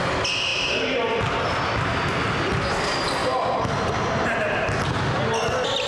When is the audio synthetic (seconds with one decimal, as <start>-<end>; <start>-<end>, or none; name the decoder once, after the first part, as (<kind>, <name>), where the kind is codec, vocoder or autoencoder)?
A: 3.2-4.1 (vocoder, BigVGAN v2)